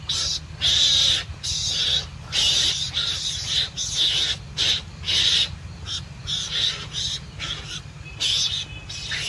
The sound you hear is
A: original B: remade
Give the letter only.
A